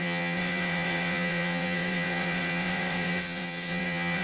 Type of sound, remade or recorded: remade